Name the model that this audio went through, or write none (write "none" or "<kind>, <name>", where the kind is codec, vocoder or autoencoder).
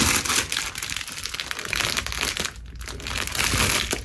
none